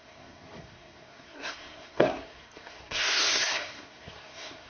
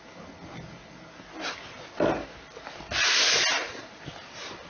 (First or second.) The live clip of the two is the second